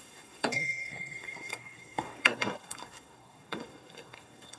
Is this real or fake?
fake